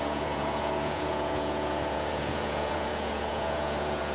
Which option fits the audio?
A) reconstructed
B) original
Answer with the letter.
A